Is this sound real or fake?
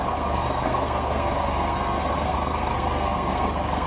fake